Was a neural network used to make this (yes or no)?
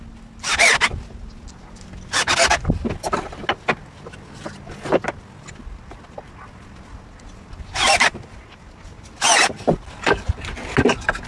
no